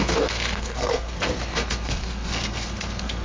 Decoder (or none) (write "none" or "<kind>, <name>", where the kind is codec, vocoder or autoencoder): codec, SNAC